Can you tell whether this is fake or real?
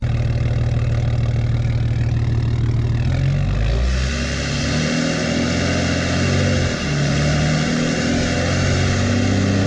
real